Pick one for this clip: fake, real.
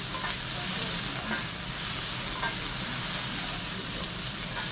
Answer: real